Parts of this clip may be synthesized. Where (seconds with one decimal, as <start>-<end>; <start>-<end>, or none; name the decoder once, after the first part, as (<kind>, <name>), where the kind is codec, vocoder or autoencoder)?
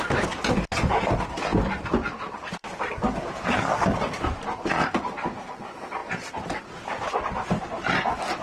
none